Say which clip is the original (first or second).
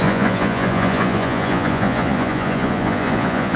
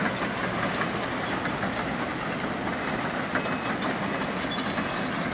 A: second